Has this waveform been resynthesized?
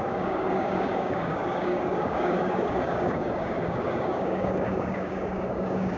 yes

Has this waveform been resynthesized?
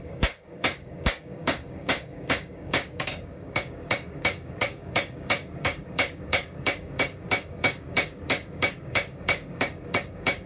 yes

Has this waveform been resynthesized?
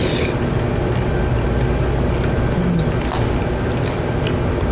no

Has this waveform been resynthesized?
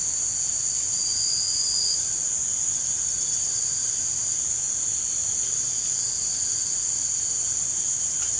no